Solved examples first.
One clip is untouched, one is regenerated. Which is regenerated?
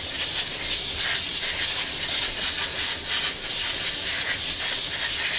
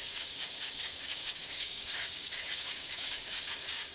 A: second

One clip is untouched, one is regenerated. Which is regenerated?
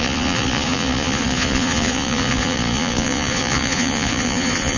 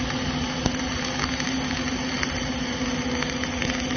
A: first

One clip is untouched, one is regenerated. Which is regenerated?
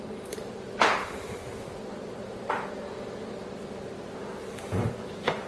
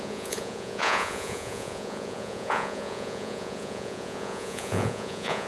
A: second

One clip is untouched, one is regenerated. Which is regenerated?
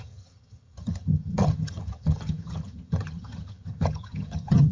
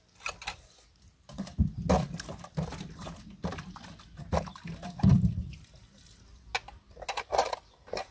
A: first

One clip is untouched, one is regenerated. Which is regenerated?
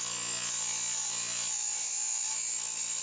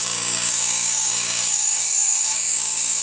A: second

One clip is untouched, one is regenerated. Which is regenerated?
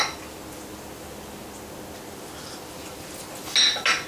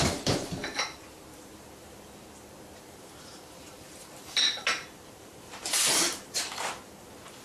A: second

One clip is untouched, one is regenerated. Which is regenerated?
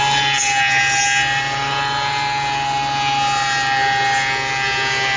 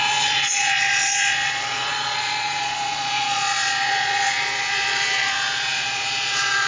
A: second